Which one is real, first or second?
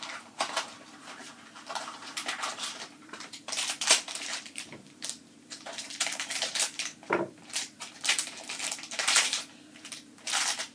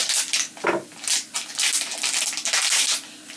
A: second